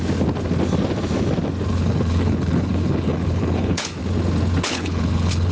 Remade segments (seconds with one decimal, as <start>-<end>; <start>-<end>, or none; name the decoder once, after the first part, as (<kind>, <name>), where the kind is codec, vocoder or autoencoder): 1.7-4.0 (codec, HILCodec); 4.6-5.5